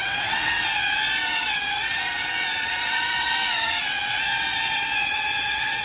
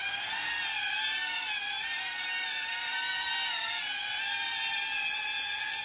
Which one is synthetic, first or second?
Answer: first